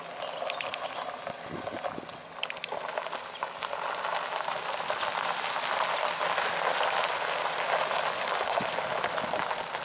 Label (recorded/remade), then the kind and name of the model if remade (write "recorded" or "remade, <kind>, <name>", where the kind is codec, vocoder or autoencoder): recorded